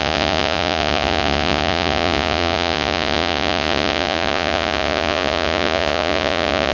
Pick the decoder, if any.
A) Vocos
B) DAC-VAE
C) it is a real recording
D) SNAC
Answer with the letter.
A